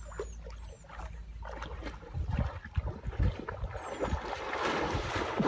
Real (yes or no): yes